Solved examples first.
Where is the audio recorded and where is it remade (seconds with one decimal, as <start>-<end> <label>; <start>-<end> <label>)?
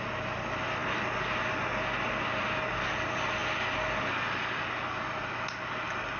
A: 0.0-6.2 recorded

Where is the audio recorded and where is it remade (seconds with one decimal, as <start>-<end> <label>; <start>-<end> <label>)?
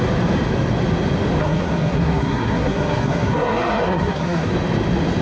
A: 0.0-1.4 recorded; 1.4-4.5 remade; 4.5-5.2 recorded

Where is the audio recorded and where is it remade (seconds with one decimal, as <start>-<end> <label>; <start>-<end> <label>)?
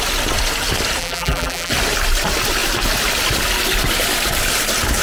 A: 0.0-1.0 recorded; 1.0-1.7 remade; 1.7-5.0 recorded